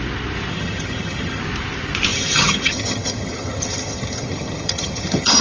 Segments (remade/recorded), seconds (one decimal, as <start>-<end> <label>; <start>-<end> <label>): 0.0-0.5 recorded; 0.5-1.4 remade; 1.4-2.1 recorded; 2.1-5.4 remade